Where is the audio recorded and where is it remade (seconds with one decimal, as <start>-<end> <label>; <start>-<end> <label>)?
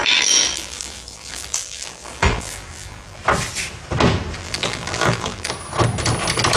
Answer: 0.0-3.2 remade; 3.2-4.4 recorded; 4.4-5.5 remade; 5.5-6.6 recorded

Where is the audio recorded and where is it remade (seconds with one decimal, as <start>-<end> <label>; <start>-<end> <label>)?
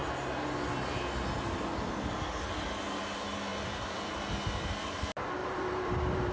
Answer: 0.0-3.5 recorded; 3.5-4.2 remade; 4.2-5.4 recorded; 5.4-6.3 remade